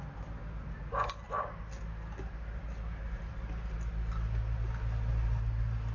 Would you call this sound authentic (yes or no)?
yes